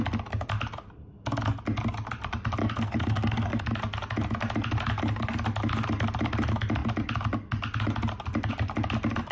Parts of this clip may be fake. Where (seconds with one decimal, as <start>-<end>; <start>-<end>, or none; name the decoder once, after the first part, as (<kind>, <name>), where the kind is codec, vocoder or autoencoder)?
2.6-3.6 (codec, SNAC)